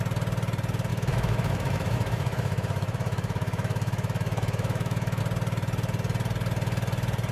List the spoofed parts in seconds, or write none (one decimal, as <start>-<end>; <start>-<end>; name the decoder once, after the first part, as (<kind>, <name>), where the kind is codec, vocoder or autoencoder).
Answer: 0.9-5.2 (autoencoder, DAC-VAE)